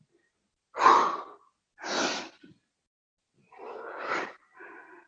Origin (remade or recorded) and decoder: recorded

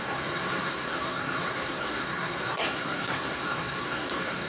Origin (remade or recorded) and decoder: remade, codec, SNAC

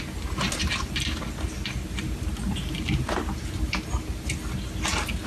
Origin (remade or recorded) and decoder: recorded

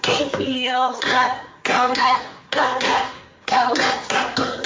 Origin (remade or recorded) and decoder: remade, codec, SNAC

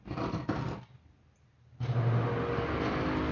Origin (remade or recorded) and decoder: recorded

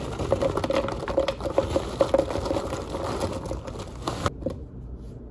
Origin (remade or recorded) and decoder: recorded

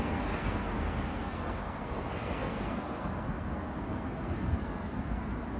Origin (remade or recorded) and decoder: remade, codec, SNAC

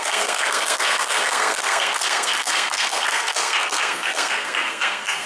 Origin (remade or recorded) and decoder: remade, codec, SNAC